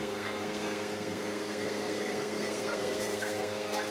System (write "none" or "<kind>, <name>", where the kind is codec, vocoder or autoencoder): codec, SNAC